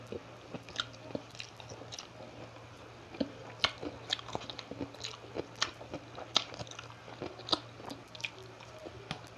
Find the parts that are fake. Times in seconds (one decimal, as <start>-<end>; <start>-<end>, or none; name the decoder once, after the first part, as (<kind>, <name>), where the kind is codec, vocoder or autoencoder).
none